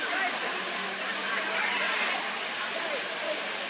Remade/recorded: recorded